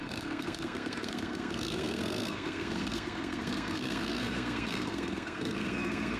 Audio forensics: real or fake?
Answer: fake